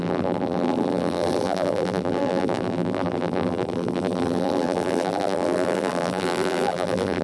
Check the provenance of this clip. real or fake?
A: fake